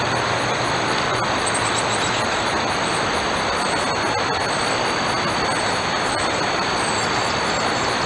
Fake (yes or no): no